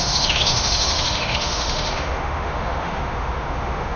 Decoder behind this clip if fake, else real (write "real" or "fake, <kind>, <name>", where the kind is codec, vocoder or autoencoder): fake, autoencoder, DAC-VAE